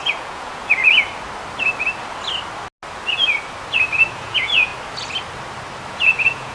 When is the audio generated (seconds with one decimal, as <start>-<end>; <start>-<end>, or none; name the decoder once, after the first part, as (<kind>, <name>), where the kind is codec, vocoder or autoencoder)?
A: 0.0-0.8 (vocoder, Vocos); 4.1-4.7; 5.9-6.5